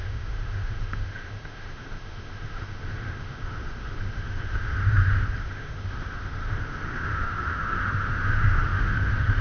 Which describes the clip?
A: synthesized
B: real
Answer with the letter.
A